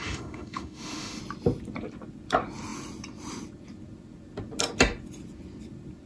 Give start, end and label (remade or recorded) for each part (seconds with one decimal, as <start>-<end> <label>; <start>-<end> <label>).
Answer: 0.0-1.2 remade; 1.2-6.1 recorded